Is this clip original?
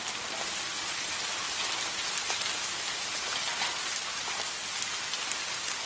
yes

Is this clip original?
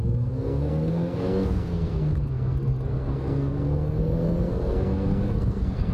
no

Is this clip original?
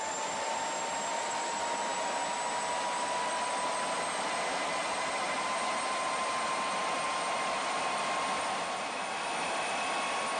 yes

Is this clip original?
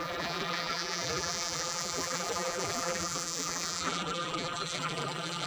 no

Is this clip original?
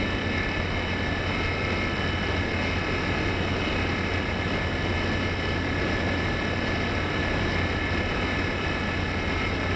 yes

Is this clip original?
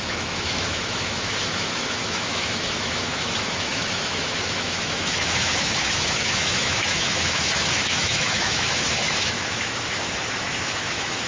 no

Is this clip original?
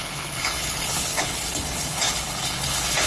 no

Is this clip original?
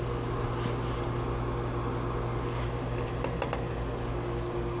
yes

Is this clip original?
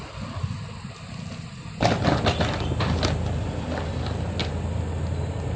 yes